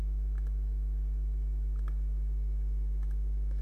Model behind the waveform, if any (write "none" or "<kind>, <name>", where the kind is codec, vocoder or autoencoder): autoencoder, DAC-VAE